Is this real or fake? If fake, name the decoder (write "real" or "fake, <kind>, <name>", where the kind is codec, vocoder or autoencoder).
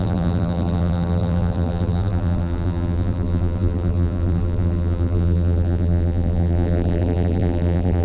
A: fake, vocoder, BigVGAN v2